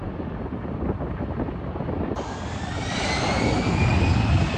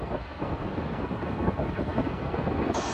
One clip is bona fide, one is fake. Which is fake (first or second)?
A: second